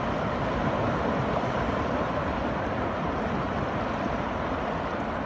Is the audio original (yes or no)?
yes